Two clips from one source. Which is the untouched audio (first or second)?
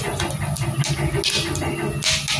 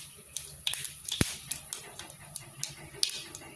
first